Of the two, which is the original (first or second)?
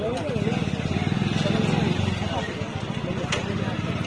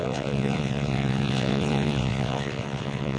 first